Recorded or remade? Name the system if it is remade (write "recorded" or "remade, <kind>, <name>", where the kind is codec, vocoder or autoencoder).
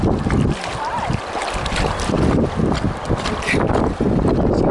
recorded